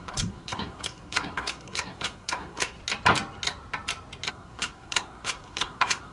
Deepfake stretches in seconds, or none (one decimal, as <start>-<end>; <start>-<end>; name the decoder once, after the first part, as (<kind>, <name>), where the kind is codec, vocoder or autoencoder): 0.0-2.8 (codec, SNAC); 4.3-6.1